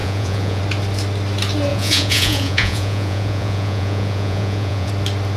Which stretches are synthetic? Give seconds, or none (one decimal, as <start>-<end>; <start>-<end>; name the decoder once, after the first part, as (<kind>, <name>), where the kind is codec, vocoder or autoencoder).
0.0-0.6 (vocoder, Vocos); 1.7-4.9